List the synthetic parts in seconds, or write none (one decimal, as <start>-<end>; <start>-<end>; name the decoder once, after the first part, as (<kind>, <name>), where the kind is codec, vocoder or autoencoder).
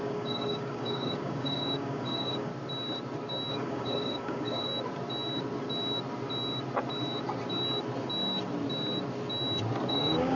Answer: 0.0-2.5 (codec, DAC); 3.5-4.7; 9.9-10.4